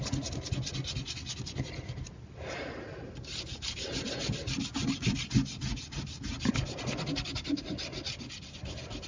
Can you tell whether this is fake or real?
real